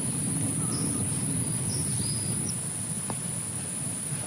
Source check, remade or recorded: recorded